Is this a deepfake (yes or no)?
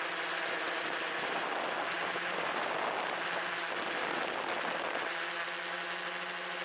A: no